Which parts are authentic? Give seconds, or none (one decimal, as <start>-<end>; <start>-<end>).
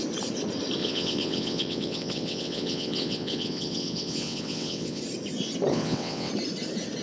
0.0-0.8; 5.0-5.7; 6.3-7.0